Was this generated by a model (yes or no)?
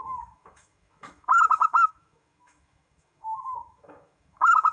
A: yes